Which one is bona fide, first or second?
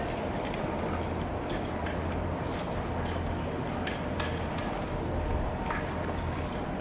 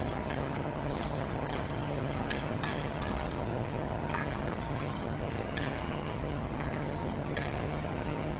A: first